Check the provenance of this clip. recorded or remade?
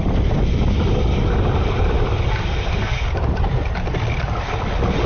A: remade